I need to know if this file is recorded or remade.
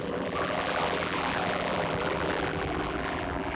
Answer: remade